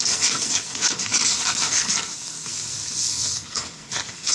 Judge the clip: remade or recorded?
remade